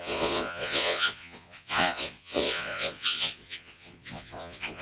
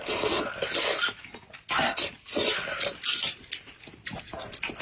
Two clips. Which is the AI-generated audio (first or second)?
first